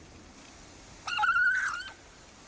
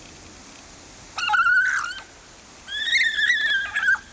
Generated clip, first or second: first